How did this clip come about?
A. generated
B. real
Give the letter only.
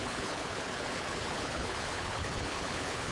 A